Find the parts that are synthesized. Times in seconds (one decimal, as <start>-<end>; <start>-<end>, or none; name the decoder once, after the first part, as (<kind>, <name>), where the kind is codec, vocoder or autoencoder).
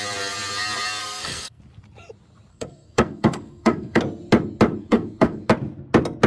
1.0-1.6 (codec, SNAC); 2.5-4.0; 4.8-5.5